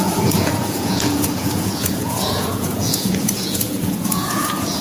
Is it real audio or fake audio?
fake